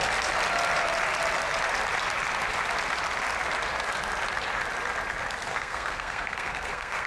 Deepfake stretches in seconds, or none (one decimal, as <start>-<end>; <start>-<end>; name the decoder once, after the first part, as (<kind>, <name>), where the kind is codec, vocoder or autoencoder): 5.5-7.1 (codec, SNAC)